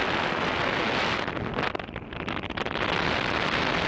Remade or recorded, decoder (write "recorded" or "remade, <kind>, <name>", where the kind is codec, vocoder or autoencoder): recorded